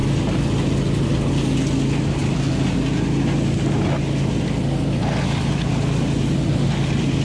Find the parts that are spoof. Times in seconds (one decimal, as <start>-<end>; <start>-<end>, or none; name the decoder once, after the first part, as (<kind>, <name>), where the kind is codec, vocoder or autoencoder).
none